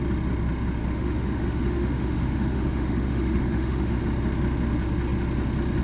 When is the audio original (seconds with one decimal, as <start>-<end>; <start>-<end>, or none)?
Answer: 0.0-0.8; 4.0-5.8